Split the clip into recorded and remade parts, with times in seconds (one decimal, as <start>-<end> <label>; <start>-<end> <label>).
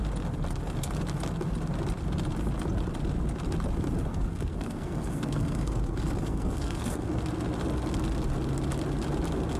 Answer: 0.0-4.1 recorded; 4.1-7.2 remade; 7.2-9.6 recorded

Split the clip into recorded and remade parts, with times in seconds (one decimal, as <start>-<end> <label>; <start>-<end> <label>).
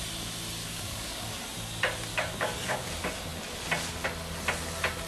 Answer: 0.0-0.6 recorded; 0.6-1.3 remade; 1.3-2.1 recorded; 2.1-2.9 remade; 2.9-5.1 recorded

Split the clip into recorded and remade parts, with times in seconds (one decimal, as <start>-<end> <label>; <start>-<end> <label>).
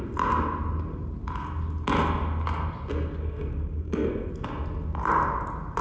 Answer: 0.0-3.2 recorded; 3.2-4.3 remade; 4.3-5.8 recorded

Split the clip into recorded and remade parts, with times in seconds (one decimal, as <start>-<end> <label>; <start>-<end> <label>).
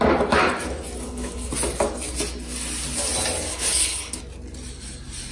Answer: 0.0-1.0 recorded; 1.0-1.5 remade; 1.5-3.5 recorded; 3.5-4.2 remade; 4.2-5.3 recorded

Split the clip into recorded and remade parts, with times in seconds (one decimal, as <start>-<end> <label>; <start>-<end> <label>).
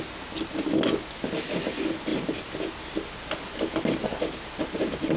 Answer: 0.0-2.1 recorded; 2.1-2.6 remade; 2.6-5.2 recorded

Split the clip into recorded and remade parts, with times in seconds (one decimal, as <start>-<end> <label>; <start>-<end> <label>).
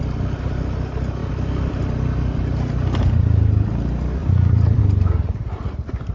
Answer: 0.0-4.2 recorded; 4.2-4.8 remade; 4.8-6.1 recorded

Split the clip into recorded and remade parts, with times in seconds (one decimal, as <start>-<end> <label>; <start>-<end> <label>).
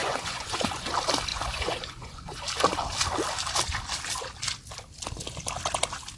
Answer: 0.0-0.9 remade; 0.9-1.3 recorded; 1.3-2.4 remade; 2.4-6.2 recorded